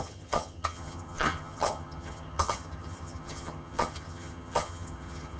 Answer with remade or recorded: remade